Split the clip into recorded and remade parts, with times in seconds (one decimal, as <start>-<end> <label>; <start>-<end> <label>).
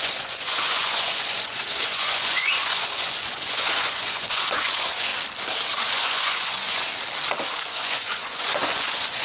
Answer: 0.0-5.1 remade; 5.1-5.8 recorded; 5.8-6.9 remade; 6.9-7.6 recorded; 7.6-9.2 remade